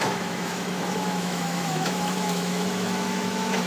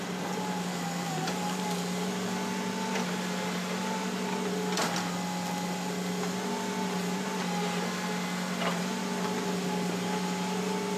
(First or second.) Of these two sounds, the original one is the second